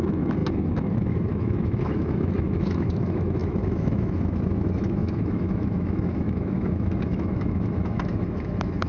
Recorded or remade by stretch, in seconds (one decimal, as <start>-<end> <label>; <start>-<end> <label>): 0.0-8.9 remade